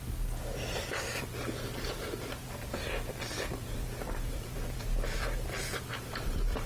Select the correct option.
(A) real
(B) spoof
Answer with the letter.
B